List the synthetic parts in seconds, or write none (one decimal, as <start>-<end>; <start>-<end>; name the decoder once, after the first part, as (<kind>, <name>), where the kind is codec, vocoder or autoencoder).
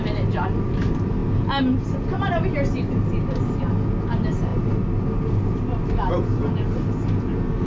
none